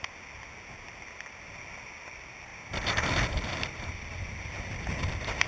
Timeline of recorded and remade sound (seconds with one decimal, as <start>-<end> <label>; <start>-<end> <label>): 0.0-5.5 recorded